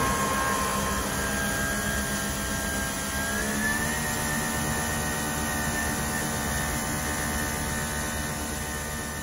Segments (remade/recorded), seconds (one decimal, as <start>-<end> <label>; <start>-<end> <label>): 0.0-9.2 recorded